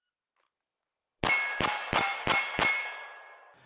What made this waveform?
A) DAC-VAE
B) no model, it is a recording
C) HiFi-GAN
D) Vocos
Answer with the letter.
B